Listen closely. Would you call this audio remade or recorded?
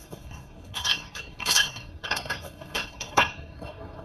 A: remade